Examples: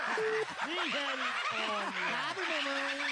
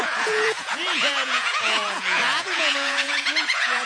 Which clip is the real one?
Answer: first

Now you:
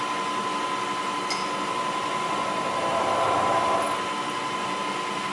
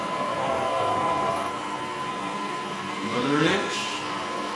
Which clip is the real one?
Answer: first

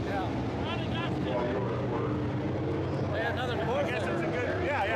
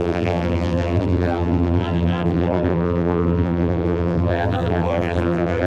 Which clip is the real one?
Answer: first